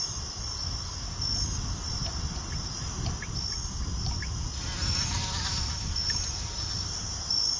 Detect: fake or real real